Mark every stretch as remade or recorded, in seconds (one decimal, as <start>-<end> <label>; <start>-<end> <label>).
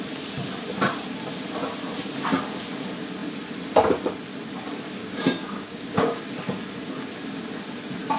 0.0-5.0 recorded; 5.0-6.2 remade; 6.2-8.2 recorded